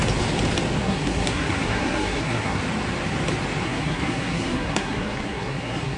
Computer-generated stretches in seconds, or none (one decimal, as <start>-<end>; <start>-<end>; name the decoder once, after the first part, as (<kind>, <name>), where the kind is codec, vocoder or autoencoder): 0.8-2.6 (codec, SNAC); 3.6-6.0